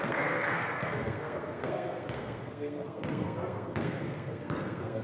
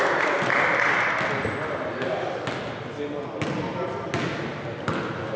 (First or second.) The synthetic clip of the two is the first